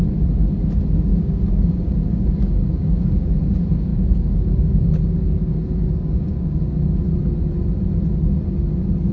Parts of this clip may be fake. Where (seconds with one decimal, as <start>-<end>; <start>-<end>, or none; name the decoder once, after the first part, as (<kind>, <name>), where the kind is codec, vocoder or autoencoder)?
1.1-3.3 (codec, DAC); 3.9-7.0